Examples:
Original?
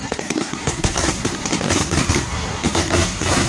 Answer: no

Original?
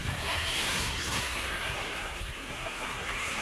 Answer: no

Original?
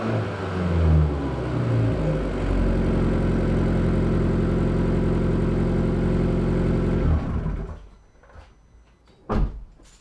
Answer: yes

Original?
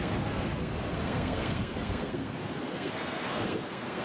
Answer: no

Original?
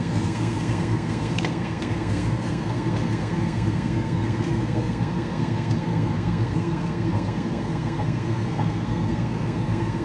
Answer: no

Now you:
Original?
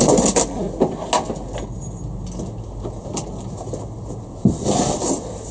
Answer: yes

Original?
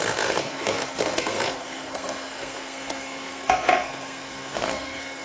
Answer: no